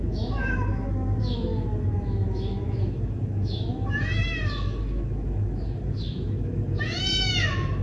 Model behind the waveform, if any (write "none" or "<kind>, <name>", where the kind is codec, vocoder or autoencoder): autoencoder, DAC-VAE